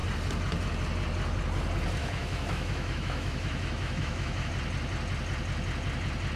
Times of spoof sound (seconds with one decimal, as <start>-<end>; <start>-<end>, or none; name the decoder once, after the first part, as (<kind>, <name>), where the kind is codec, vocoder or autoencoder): 2.0-4.5 (autoencoder, DAC-VAE)